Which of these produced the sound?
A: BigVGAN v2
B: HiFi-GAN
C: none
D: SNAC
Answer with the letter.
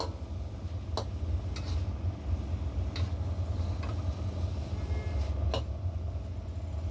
C